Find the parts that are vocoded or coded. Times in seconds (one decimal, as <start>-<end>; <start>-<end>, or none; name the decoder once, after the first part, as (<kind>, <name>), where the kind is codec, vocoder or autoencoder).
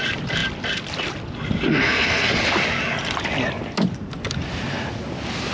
1.7-2.4 (codec, SNAC)